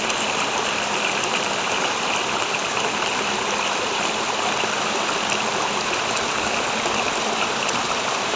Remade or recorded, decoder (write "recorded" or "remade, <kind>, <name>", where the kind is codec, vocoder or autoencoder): recorded